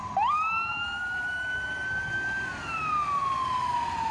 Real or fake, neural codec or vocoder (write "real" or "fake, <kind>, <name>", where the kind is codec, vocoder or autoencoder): real